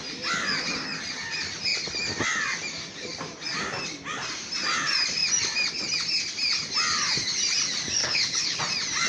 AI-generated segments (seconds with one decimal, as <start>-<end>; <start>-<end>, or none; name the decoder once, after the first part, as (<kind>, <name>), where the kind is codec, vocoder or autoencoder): 8.0-8.6 (codec, HILCodec)

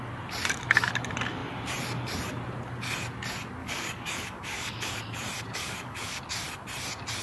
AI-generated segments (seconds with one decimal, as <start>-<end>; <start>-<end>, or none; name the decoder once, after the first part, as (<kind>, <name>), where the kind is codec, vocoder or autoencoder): 3.6-5.0 (codec, DAC); 5.6-6.2